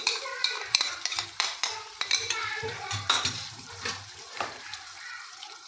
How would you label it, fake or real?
fake